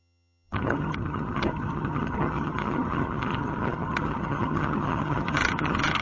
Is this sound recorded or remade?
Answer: remade